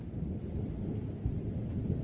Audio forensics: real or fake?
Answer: real